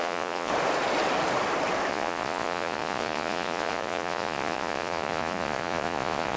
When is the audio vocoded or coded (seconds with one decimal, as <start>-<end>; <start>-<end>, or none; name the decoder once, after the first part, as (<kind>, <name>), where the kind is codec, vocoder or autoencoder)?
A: 0.0-0.5 (vocoder, Vocos); 1.9-6.4